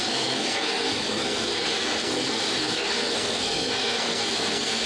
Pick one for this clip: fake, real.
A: fake